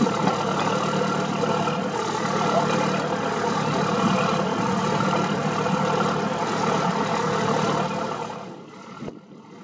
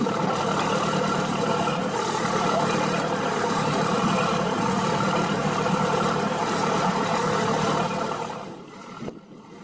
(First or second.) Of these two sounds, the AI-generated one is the second